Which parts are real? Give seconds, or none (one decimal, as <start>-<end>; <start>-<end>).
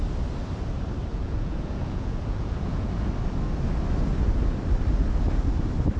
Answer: 0.0-1.1; 2.9-6.0